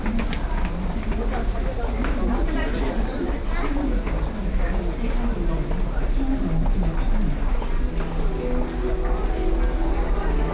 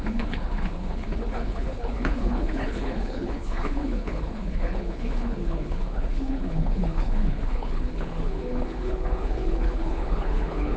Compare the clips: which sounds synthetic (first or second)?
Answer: second